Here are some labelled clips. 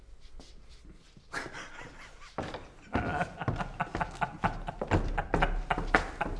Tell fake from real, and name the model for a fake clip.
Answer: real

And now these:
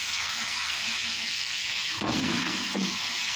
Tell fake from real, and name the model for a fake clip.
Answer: fake, codec, SNAC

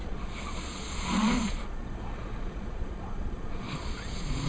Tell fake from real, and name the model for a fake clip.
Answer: fake, vocoder, Vocos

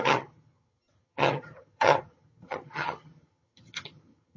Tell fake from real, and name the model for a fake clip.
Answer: fake, vocoder, HiFi-GAN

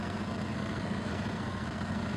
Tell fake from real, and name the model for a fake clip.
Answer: fake, codec, SNAC